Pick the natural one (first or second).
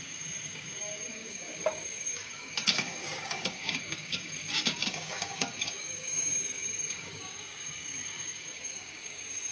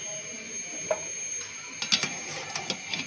second